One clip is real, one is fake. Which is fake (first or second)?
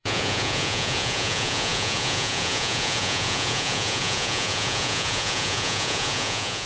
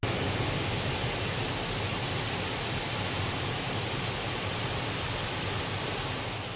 first